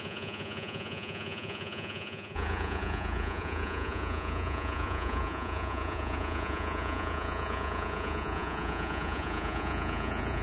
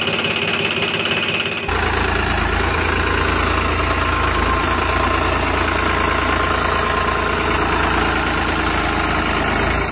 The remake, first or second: first